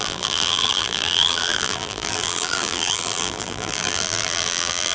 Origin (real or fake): fake